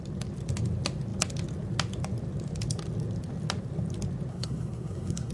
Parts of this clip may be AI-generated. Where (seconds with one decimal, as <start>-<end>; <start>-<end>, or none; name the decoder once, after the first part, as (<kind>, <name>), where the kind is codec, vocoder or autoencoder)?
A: 4.3-5.3 (codec, SNAC)